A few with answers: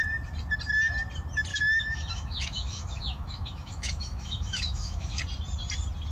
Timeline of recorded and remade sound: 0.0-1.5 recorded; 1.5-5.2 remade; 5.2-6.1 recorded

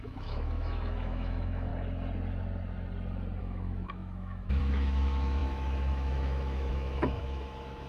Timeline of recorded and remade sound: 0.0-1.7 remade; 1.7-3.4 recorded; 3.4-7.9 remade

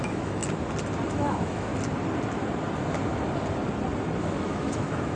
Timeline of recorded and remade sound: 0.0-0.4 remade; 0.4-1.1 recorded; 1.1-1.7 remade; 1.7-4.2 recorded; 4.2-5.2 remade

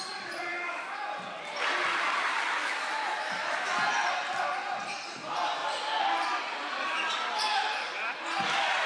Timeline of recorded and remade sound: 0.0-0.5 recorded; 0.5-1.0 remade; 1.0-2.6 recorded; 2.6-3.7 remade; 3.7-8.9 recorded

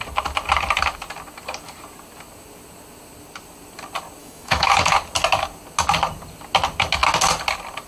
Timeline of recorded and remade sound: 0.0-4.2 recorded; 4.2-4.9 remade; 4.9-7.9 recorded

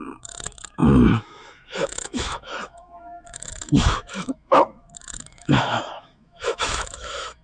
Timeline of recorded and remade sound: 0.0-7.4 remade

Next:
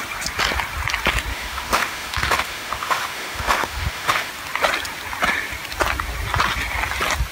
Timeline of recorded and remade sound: 0.0-1.3 recorded; 1.3-4.3 remade; 4.3-7.3 recorded

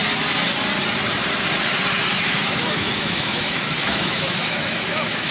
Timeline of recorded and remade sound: 0.0-2.1 recorded; 2.1-5.3 remade